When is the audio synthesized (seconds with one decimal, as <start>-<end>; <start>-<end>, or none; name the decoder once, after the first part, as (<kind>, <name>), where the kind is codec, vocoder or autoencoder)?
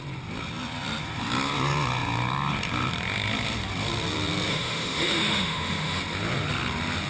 4.5-6.0 (autoencoder, DAC-VAE)